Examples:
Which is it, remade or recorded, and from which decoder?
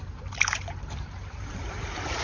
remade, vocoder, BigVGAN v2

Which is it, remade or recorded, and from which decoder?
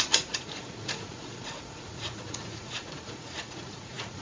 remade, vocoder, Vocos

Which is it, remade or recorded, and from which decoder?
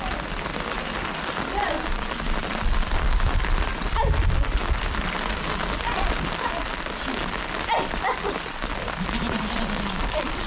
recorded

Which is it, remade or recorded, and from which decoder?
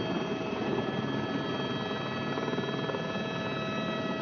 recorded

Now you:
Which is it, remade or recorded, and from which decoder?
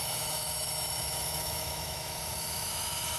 remade, autoencoder, DAC-VAE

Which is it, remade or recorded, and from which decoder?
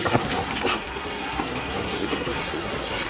remade, codec, SNAC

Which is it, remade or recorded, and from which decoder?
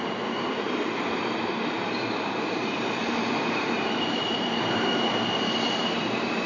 remade, vocoder, BigVGAN v2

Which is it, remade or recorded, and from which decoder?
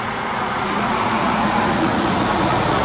remade, vocoder, Vocos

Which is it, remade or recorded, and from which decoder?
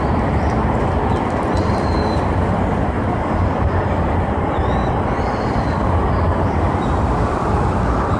recorded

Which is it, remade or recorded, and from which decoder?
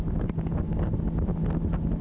recorded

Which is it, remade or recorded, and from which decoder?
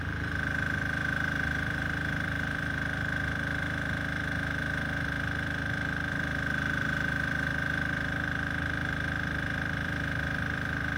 remade, vocoder, BigVGAN v2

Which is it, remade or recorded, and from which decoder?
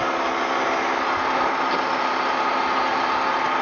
recorded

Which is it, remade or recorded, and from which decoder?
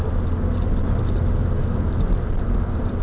recorded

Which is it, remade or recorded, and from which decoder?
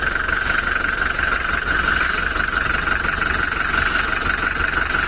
recorded